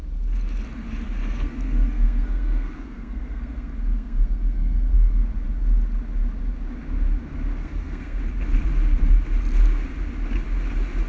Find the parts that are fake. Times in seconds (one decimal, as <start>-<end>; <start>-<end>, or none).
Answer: 1.2-5.2; 7.6-8.2